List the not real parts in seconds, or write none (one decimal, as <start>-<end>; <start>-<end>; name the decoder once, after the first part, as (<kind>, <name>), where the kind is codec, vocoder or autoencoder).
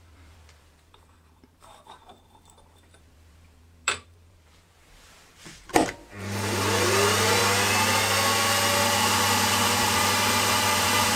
0.0-7.4 (vocoder, BigVGAN v2); 9.8-11.2